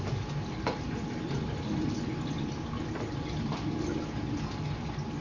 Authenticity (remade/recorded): recorded